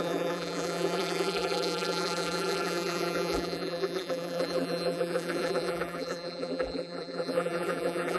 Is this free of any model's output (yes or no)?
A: no